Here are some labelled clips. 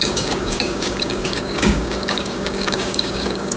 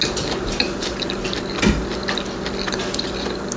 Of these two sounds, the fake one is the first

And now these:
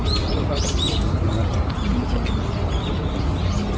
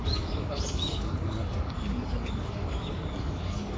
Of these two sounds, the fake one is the second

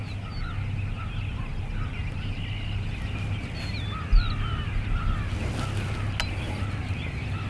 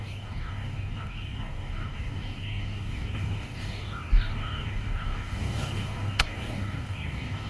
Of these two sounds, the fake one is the second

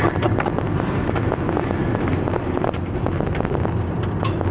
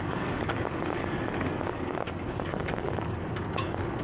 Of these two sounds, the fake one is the second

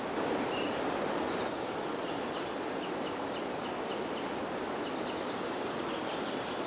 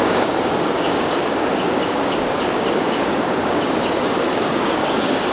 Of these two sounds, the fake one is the second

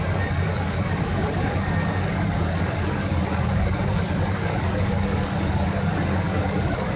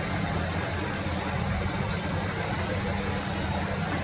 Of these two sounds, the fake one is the first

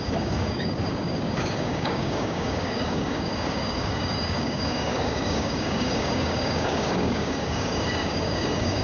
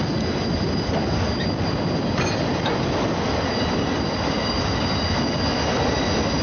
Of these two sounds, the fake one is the first